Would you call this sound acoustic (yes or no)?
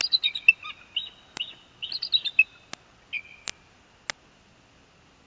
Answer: yes